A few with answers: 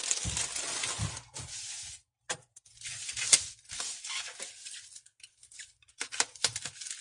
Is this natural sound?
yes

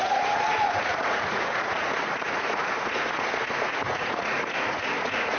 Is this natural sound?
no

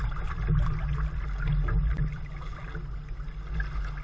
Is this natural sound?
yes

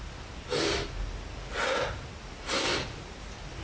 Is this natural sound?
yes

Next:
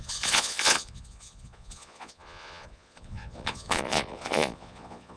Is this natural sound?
no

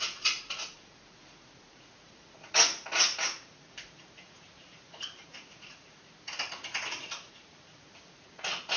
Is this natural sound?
no